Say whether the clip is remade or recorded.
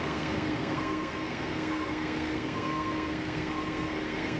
remade